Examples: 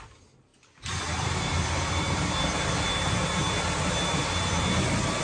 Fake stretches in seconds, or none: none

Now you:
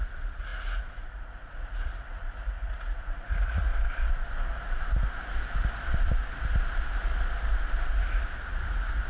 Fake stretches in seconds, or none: 0.0-3.7 (vocoder, Vocos); 8.0-9.1